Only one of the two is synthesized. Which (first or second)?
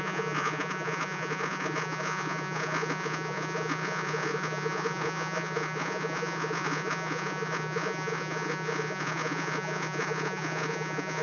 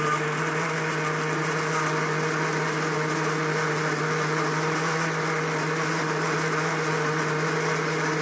first